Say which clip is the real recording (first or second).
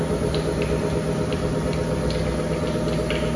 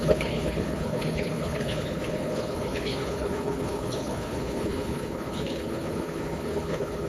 first